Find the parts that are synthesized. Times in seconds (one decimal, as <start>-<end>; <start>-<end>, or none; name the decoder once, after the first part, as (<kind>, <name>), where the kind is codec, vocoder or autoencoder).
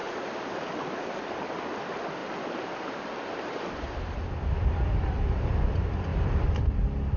none